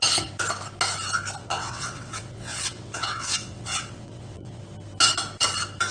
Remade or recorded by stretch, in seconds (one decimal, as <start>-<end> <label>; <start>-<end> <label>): 0.0-1.4 recorded; 1.4-4.6 remade; 4.6-5.9 recorded